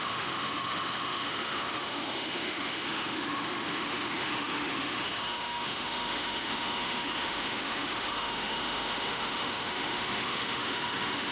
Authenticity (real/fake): fake